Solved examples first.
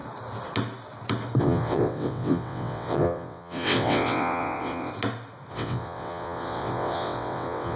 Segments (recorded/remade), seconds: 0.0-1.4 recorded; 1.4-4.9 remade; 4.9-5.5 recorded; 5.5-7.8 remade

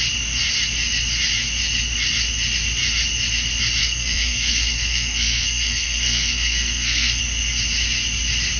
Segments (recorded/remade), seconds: 0.0-3.8 recorded; 3.8-7.2 remade; 7.2-8.6 recorded

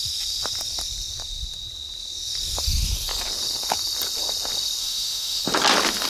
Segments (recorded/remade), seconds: 0.0-4.8 recorded; 4.8-5.4 remade; 5.4-6.1 recorded

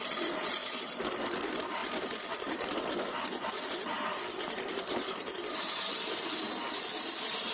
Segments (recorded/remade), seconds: 0.0-1.8 recorded; 1.8-3.0 remade; 3.0-3.4 recorded; 3.4-6.5 remade; 6.5-7.5 recorded